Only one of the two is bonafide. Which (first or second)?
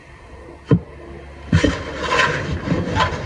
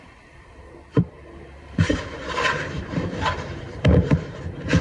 first